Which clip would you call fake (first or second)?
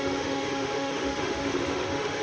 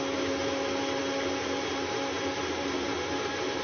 first